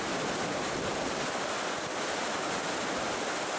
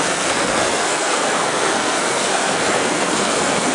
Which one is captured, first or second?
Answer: first